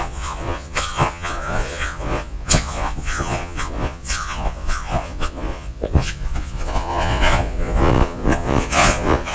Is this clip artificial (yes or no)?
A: yes